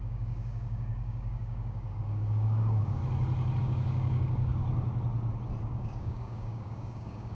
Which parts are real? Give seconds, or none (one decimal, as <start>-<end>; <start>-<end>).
3.0-3.6; 4.6-5.6